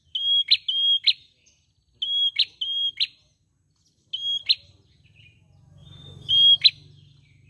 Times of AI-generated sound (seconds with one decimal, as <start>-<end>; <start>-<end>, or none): none